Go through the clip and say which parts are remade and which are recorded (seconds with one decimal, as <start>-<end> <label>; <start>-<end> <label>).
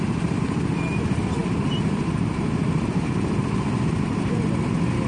0.0-5.1 recorded